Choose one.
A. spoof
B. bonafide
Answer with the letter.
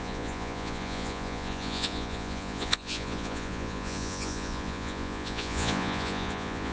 A